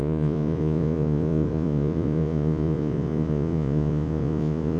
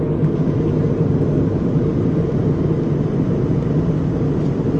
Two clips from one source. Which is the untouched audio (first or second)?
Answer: second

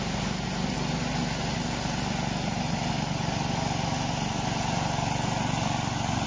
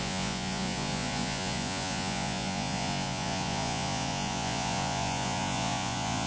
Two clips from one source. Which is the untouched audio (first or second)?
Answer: first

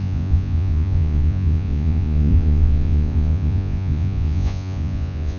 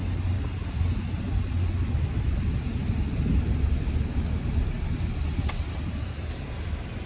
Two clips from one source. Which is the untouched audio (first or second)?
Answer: second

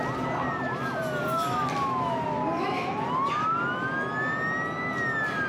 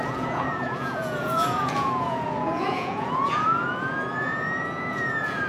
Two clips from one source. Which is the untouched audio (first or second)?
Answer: first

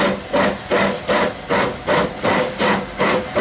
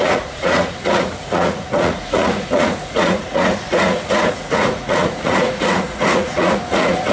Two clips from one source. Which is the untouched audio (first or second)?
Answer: first